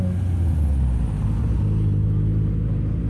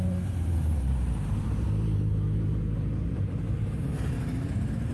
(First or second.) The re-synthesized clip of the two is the second